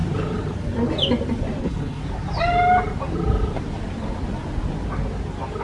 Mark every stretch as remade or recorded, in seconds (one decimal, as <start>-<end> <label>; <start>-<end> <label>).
0.0-1.6 recorded; 1.6-2.0 remade; 2.0-5.6 recorded